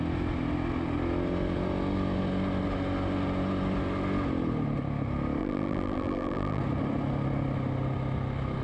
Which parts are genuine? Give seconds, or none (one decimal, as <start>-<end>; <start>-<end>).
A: 0.0-5.4; 6.6-8.6